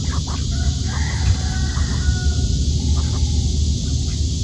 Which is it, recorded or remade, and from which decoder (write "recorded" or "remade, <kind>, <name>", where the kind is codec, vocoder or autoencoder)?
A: recorded